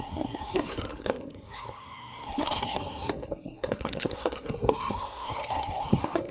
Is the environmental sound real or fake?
fake